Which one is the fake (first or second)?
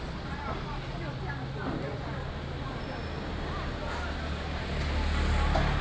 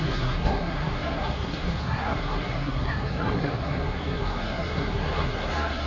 second